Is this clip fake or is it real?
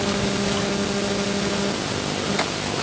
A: real